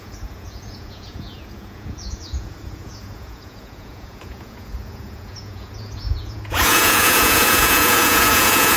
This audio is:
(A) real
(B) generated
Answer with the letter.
B